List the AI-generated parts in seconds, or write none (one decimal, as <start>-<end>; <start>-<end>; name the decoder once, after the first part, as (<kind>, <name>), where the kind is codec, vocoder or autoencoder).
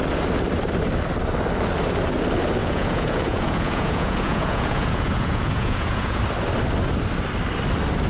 2.6-6.2 (vocoder, Vocos)